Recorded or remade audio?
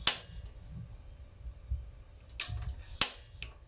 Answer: recorded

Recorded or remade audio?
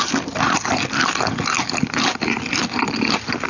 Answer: recorded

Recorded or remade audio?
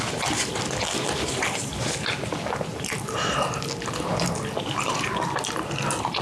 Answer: recorded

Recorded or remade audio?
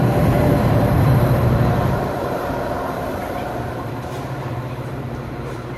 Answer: remade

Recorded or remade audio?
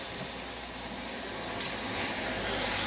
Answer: recorded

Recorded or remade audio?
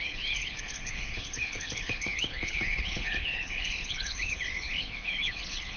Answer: remade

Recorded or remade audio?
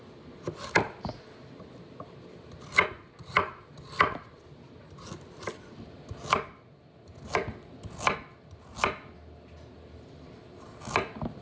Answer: recorded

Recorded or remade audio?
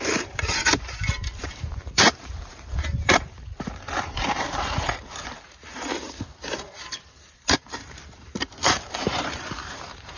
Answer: remade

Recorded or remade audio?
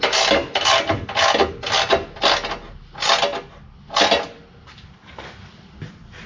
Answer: recorded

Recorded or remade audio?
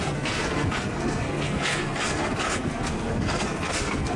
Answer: remade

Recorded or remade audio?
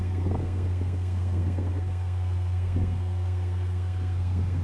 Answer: remade